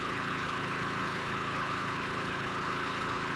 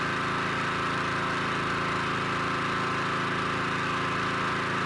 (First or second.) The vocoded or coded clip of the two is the first